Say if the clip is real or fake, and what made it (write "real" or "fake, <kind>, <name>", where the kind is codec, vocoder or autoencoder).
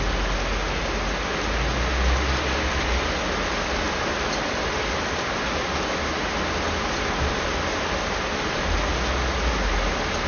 real